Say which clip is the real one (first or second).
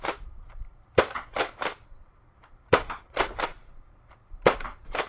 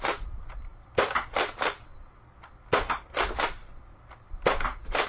second